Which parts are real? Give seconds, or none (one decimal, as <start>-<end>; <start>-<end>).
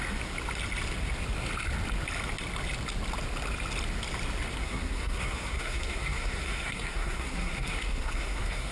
0.0-4.6